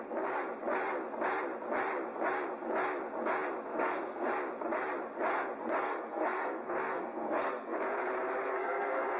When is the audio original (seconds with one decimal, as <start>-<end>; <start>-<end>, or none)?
0.0-3.7; 4.3-5.8; 7.8-8.4